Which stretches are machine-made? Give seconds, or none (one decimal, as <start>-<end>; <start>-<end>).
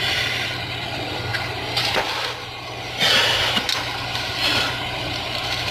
0.0-1.3; 4.7-5.7